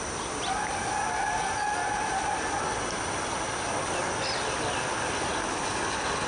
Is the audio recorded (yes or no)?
yes